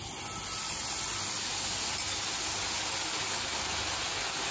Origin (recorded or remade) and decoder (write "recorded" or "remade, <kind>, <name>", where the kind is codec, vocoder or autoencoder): recorded